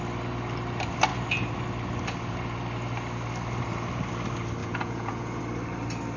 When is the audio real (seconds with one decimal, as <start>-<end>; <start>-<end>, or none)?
0.0-4.6; 5.4-6.2

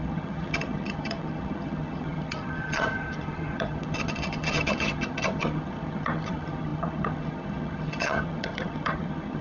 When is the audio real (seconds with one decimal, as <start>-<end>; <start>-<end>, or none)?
none

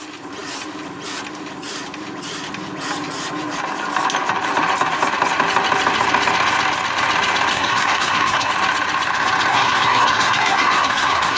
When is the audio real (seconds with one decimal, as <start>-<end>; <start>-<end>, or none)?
0.0-7.5; 8.5-9.5